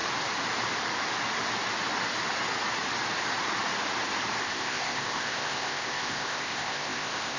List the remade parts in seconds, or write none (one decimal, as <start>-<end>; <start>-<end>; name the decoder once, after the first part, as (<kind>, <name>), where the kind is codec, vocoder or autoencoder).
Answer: 4.4-7.4 (codec, ZipCodec)